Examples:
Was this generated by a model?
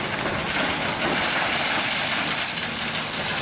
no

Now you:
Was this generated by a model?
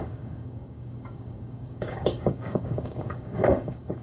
yes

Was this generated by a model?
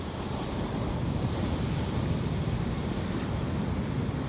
no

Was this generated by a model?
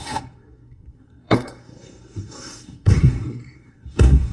yes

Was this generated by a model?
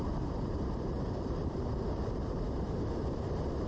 yes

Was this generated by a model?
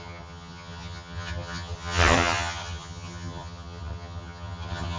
yes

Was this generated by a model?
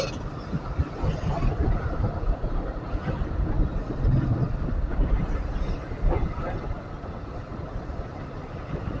no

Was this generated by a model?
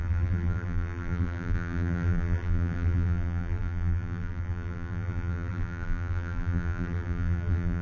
yes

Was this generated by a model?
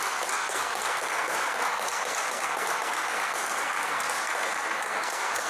yes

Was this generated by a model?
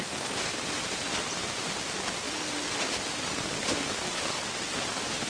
yes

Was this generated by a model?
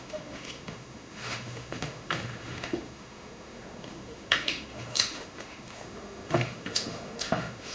yes